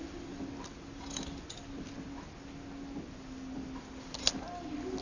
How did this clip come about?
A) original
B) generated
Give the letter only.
A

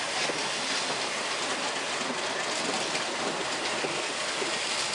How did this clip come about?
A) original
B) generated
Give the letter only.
A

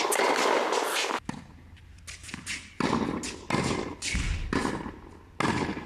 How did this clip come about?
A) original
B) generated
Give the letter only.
A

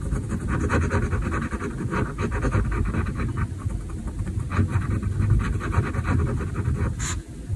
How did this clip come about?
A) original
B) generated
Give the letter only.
A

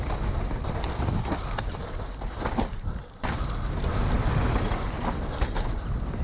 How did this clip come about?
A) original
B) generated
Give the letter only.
A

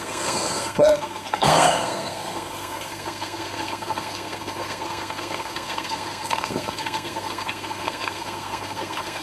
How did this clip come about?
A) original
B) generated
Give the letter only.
B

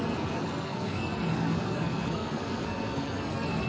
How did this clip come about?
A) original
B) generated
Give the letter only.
B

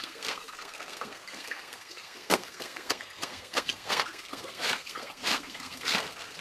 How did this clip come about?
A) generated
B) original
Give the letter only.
A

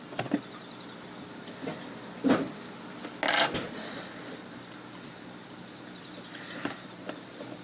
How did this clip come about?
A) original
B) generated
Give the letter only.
A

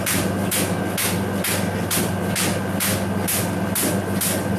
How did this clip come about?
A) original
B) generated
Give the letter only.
A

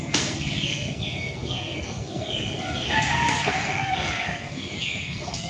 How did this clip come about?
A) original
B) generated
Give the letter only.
B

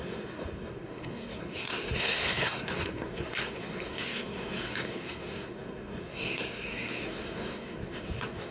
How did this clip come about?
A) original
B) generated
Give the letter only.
B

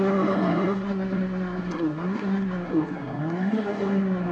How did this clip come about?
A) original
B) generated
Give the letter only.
B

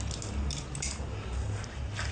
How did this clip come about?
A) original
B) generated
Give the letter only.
A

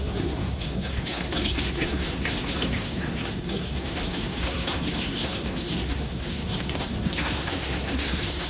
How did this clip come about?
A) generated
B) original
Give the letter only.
A